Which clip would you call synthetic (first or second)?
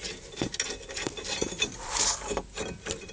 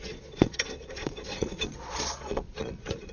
second